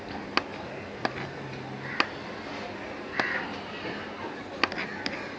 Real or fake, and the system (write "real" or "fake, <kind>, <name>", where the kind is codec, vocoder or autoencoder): real